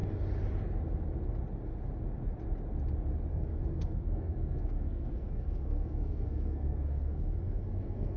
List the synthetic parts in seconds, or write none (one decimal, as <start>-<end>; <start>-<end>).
3.3-8.2